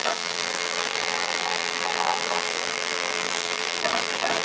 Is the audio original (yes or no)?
no